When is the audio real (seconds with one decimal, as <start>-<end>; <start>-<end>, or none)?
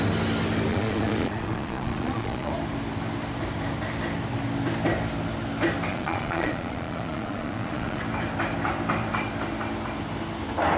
0.0-0.7; 2.5-5.9; 8.0-10.8